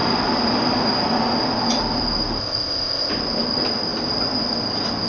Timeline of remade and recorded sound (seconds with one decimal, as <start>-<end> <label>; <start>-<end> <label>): 0.0-2.4 recorded; 2.4-3.1 remade; 3.1-5.1 recorded